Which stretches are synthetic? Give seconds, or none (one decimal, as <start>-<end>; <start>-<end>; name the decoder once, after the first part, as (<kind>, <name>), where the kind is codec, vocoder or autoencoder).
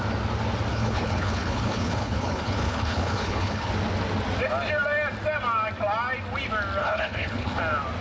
0.7-3.7 (codec, HILCodec); 6.8-7.6